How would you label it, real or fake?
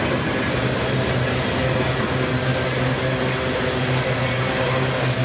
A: real